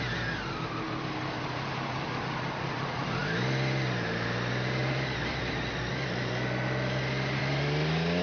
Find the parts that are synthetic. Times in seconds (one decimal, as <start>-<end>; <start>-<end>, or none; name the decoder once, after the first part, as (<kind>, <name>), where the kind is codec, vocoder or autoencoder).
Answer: none